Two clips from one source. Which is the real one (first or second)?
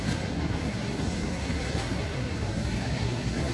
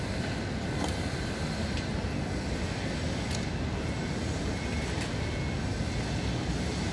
second